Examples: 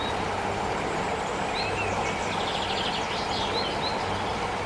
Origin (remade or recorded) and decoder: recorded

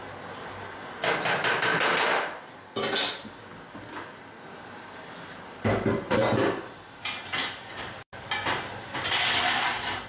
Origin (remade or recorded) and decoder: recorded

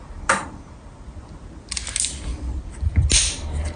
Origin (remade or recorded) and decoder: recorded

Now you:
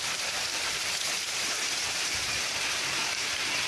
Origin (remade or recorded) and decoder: remade, vocoder, BigVGAN v2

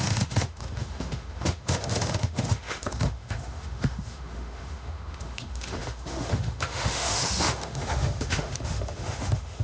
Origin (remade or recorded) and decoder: remade, autoencoder, DAC-VAE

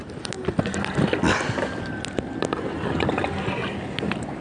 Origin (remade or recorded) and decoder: recorded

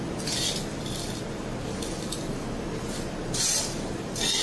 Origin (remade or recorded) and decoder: recorded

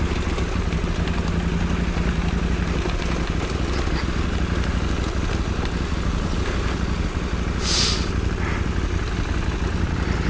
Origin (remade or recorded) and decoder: recorded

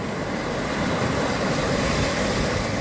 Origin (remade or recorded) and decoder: recorded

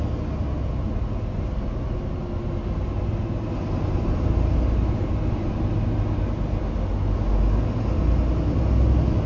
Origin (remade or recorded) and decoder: recorded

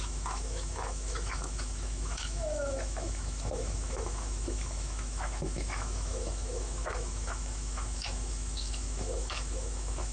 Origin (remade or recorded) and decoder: remade, autoencoder, DAC-VAE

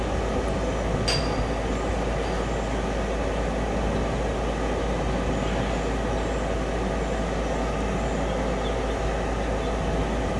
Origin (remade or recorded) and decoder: recorded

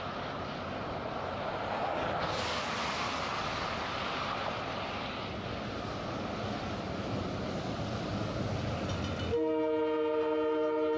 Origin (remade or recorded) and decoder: recorded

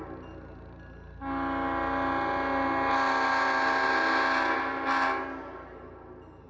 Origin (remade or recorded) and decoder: recorded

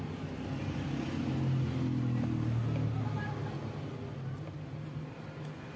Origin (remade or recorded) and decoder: recorded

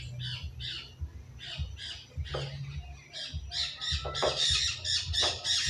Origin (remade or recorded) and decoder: recorded